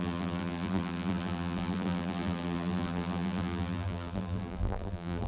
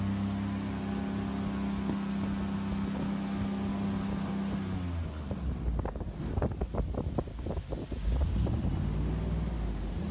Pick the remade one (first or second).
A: first